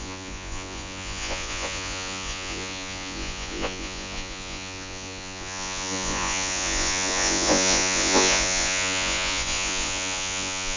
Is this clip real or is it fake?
fake